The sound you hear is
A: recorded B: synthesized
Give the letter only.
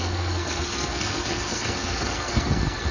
B